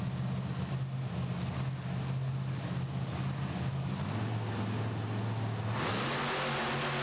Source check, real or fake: real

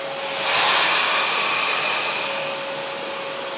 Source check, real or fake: real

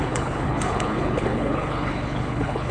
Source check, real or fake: fake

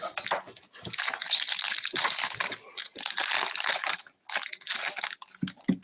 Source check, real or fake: real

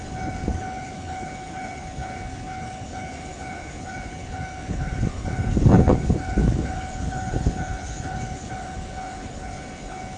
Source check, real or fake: fake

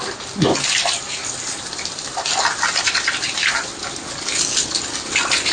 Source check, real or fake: real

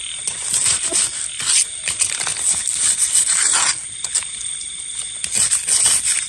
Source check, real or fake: real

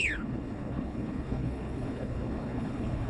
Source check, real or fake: fake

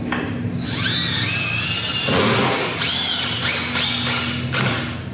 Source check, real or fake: real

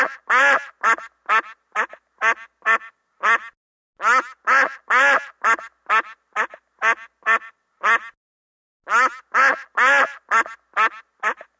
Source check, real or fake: real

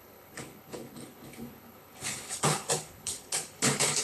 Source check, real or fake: fake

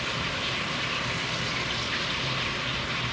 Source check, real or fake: real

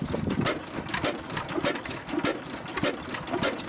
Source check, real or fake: real